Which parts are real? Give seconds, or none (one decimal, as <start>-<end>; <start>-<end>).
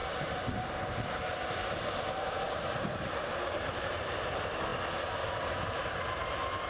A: 2.7-3.7; 4.3-6.7